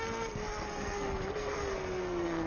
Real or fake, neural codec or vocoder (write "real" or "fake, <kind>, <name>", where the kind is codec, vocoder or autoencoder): fake, codec, SNAC